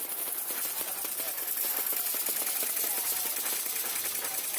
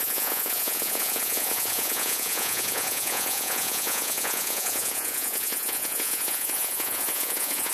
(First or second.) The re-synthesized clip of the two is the second